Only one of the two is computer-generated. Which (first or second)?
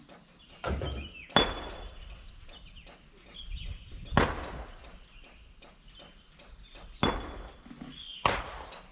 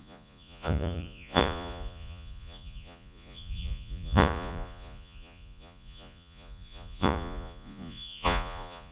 second